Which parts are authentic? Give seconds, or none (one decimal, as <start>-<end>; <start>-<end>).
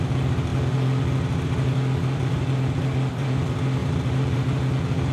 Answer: 0.0-3.8; 4.4-5.1